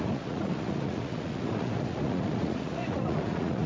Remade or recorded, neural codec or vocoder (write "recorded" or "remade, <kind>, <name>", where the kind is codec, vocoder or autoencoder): remade, vocoder, Vocos